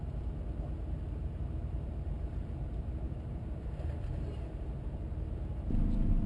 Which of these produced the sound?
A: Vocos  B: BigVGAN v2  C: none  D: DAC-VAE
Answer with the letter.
B